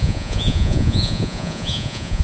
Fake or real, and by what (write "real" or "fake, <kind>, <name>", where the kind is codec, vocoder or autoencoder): fake, vocoder, Vocos